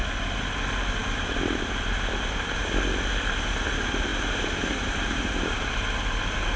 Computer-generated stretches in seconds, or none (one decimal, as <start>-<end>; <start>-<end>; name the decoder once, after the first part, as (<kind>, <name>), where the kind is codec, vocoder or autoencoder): none

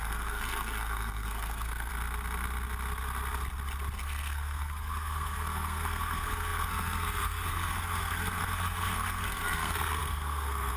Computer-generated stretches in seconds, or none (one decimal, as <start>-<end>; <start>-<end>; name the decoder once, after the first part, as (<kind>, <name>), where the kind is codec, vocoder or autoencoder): 0.0-1.9 (codec, SNAC); 4.0-10.8

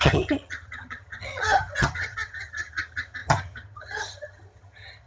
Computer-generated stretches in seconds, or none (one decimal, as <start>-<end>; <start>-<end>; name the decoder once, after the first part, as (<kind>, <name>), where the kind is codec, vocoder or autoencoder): 0.0-5.1 (vocoder, HiFi-GAN)